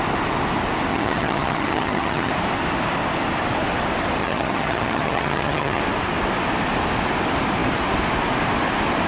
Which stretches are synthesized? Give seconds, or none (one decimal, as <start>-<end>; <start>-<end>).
0.9-2.3; 4.2-5.8